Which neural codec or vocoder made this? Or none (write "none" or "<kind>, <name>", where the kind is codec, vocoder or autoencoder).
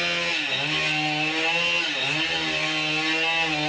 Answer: none